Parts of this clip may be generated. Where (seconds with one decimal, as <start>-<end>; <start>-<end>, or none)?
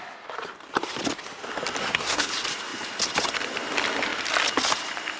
1.8-2.3